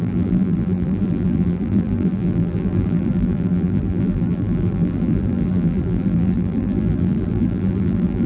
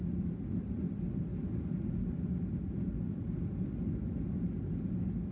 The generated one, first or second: first